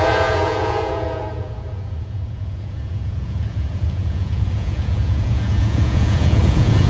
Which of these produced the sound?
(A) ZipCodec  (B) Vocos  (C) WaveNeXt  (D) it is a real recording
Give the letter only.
B